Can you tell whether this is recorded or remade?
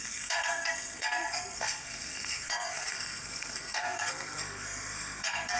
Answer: remade